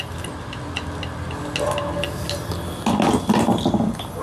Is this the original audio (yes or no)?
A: yes